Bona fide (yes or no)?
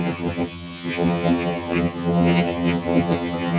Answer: no